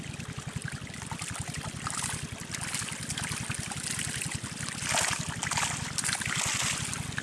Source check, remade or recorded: recorded